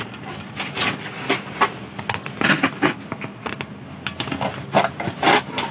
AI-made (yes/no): no